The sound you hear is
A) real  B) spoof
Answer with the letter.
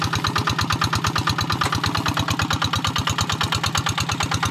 A